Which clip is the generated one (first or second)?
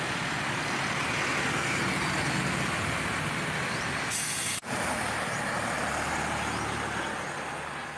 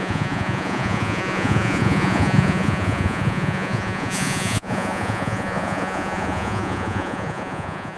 second